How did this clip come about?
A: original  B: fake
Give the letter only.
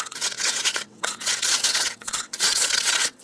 B